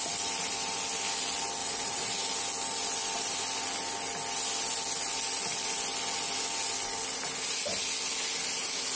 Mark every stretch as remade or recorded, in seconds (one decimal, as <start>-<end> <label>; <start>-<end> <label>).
0.0-1.6 recorded; 1.6-2.1 remade; 2.1-9.0 recorded